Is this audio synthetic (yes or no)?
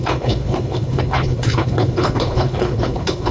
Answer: yes